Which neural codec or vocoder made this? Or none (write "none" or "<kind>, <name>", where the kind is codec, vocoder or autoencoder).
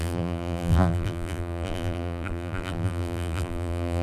vocoder, BigVGAN v2